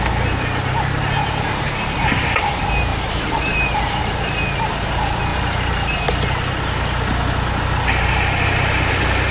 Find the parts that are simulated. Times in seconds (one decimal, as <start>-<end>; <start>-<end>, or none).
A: 2.9-4.7; 5.3-6.1

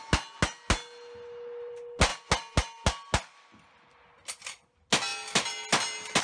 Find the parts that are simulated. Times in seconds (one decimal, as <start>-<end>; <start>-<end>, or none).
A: none